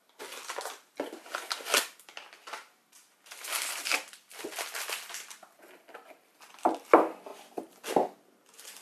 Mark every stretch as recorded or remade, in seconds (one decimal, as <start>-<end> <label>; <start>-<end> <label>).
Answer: 0.0-8.8 recorded